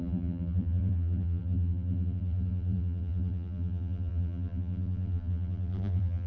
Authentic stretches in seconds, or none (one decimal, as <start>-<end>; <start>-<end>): none